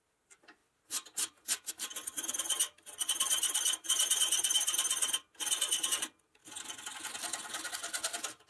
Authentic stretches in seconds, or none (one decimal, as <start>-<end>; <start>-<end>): 6.4-7.7